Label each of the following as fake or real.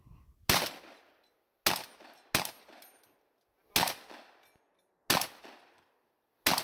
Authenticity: real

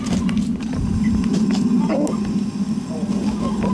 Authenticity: real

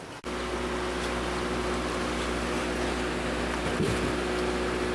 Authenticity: real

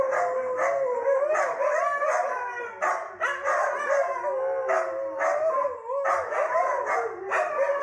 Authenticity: real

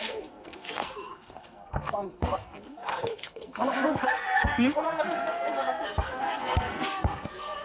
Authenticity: fake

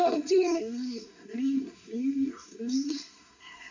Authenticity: fake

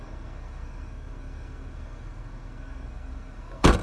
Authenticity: fake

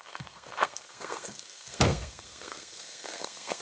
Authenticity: fake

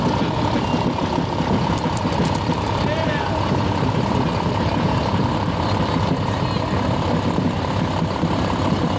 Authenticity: real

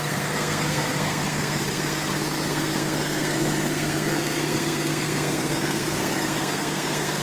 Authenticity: fake